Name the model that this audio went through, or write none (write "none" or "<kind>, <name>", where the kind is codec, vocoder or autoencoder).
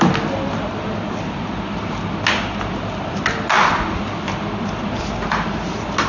none